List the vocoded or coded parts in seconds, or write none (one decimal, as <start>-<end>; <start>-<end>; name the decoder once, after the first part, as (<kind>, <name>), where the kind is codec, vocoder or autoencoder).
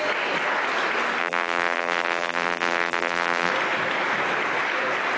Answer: 1.2-3.5 (vocoder, BigVGAN v2)